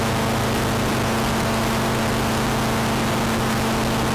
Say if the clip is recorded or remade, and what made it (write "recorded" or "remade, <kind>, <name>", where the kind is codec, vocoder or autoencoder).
recorded